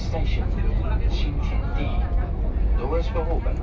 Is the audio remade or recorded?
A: recorded